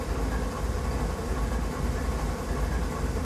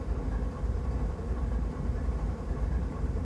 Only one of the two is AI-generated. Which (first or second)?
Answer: second